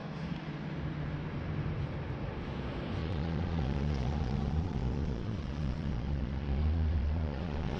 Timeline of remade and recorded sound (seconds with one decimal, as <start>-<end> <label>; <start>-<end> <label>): 0.0-3.0 recorded; 3.0-7.8 remade